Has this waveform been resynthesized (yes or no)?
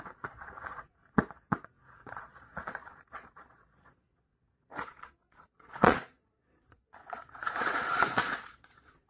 yes